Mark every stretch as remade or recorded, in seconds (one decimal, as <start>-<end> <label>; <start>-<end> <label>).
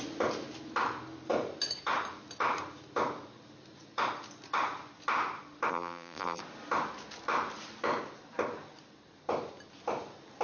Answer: 0.0-5.7 recorded; 5.7-6.4 remade; 6.4-10.4 recorded